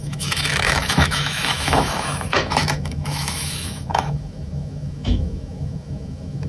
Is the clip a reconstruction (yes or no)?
yes